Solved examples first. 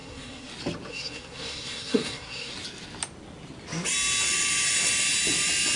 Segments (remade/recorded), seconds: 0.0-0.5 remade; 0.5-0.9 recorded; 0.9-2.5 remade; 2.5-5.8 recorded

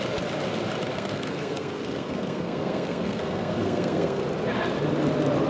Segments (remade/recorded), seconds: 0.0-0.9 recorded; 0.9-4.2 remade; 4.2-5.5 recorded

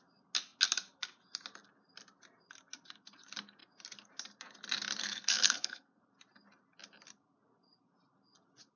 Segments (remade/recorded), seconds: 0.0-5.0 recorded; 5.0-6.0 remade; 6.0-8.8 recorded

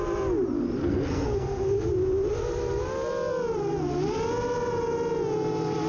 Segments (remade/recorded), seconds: 0.0-0.8 recorded; 0.8-1.9 remade; 1.9-5.9 recorded

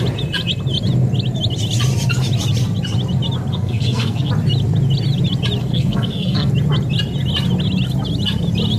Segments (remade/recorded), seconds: 0.0-3.5 recorded; 3.5-4.3 remade; 4.3-5.6 recorded; 5.6-6.5 remade; 6.5-8.8 recorded